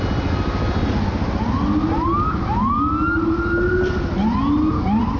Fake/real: real